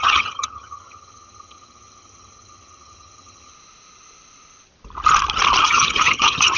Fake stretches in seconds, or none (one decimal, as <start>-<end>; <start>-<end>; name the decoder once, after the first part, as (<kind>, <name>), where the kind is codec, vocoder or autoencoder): 0.0-3.5 (vocoder, HiFi-GAN); 5.6-6.6